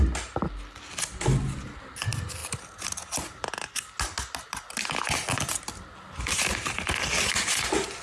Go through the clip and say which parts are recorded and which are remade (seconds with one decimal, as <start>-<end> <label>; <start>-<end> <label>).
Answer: 0.0-8.0 recorded